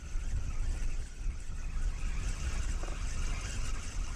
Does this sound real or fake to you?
real